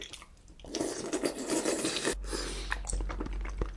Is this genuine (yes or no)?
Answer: yes